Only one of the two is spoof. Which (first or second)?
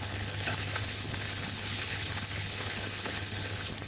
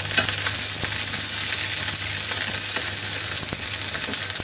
first